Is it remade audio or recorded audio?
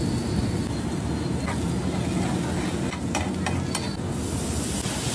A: recorded